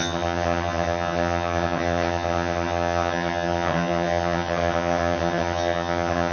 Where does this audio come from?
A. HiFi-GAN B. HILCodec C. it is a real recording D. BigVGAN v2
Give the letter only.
A